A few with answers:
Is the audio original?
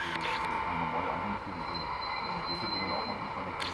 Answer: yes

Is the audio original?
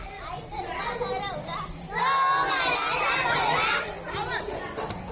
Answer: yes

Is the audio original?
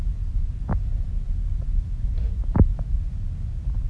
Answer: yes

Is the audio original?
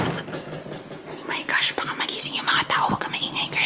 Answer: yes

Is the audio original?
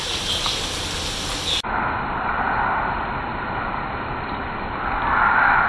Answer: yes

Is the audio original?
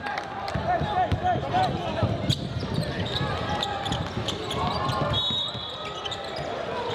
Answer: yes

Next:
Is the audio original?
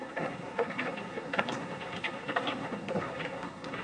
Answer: no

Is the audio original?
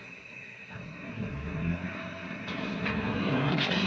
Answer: no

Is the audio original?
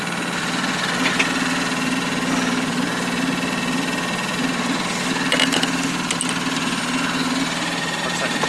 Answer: yes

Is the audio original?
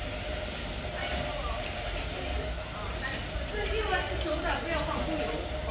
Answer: yes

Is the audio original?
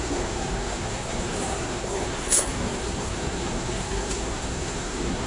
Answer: no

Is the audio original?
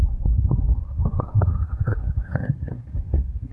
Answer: no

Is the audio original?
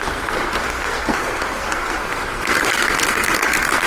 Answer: no